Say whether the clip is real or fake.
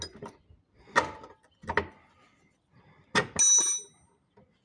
real